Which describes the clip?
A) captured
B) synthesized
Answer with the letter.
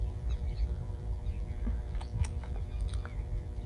B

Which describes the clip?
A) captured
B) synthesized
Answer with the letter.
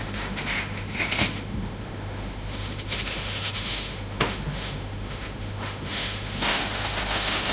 B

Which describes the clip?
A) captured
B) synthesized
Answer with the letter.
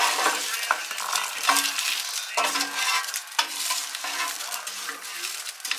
A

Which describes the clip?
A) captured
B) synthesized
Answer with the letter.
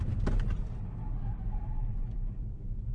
A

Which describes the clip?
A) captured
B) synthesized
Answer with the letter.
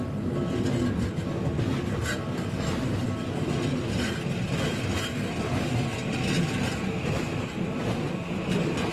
A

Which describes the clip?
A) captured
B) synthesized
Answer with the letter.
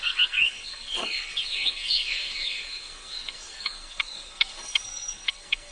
B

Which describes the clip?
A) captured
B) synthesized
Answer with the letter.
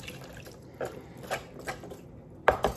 A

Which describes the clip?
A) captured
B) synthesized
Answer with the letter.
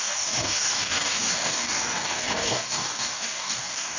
B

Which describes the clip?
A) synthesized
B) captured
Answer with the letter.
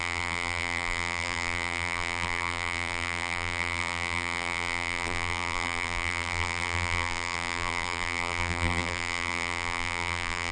A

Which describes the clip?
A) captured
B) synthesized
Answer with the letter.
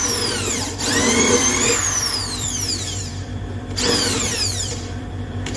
B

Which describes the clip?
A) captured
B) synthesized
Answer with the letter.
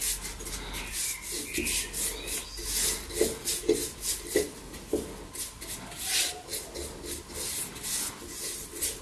A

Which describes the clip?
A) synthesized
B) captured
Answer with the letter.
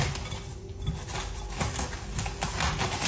B